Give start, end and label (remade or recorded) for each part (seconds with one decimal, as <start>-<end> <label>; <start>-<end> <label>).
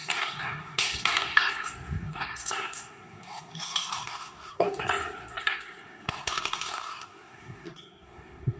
0.0-8.6 remade